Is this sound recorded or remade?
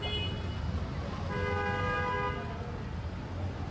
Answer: recorded